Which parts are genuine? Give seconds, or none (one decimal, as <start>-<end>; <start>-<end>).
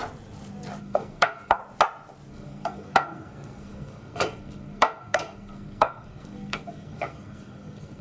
0.0-0.8; 1.6-2.3